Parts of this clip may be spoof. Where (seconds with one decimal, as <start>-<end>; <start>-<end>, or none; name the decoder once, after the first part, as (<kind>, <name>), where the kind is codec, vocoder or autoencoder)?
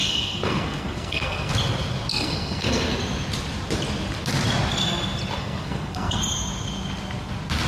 0.0-1.5 (codec, SNAC); 2.1-2.9; 5.4-6.2